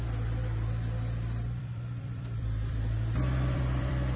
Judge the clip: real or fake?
fake